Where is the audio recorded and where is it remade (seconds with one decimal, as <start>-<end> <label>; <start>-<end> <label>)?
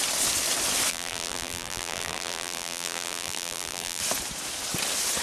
0.0-0.9 recorded; 0.9-4.0 remade; 4.0-5.2 recorded